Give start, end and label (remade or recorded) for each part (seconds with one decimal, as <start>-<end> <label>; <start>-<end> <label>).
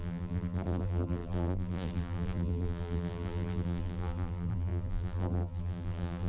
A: 0.0-6.3 remade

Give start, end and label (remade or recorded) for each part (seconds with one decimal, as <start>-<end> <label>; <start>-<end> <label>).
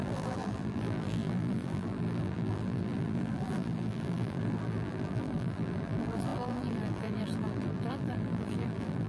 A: 0.0-9.1 remade